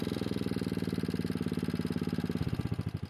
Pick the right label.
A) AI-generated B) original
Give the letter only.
B